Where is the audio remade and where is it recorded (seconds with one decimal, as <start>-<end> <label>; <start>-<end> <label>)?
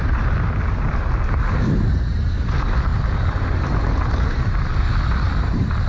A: 0.0-5.9 recorded